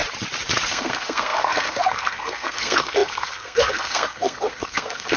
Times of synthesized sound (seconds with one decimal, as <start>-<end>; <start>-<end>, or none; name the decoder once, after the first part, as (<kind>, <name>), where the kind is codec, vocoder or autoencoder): 0.7-5.2 (codec, SNAC)